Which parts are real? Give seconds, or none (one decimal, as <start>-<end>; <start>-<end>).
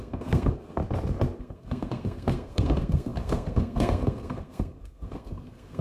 0.8-1.4